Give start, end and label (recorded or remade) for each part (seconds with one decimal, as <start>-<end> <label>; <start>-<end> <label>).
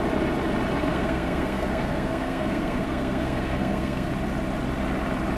0.0-0.9 recorded; 0.9-4.1 remade; 4.1-5.4 recorded